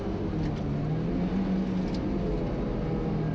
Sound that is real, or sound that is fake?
real